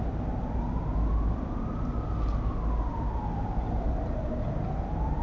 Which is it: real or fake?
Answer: real